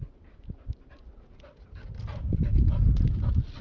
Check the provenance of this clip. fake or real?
real